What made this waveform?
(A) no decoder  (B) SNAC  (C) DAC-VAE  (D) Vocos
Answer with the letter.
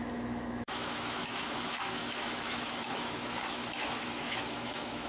C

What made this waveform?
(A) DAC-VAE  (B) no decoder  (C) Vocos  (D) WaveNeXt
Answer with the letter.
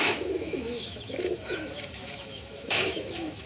A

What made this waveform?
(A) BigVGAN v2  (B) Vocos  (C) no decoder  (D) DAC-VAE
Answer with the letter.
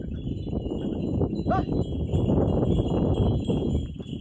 C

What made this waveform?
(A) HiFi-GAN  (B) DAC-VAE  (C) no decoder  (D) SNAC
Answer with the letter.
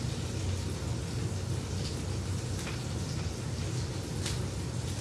C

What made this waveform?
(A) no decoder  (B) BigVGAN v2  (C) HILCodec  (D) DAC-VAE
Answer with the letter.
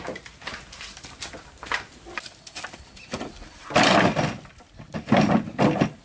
A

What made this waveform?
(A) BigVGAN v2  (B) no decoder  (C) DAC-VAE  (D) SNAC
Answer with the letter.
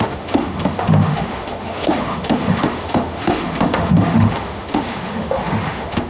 C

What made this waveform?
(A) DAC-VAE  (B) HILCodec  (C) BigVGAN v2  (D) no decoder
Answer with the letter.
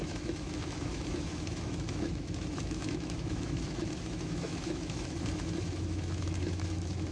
A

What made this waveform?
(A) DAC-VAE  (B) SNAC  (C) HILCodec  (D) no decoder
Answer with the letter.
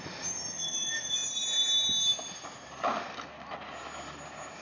D